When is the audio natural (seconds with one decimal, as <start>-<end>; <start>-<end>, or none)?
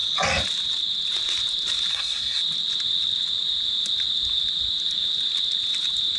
0.0-1.9; 2.4-6.2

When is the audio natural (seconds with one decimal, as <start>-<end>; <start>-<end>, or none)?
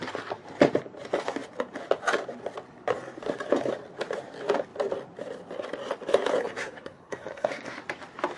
0.0-6.4; 7.8-8.4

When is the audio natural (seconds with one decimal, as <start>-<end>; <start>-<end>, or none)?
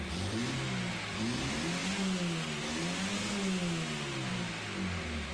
0.0-5.3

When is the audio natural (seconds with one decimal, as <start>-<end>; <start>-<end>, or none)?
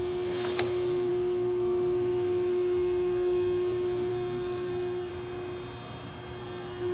5.1-6.4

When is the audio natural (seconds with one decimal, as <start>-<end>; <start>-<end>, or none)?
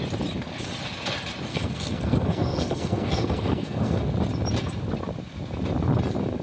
0.0-1.5; 4.0-6.4